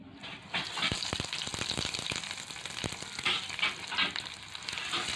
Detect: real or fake real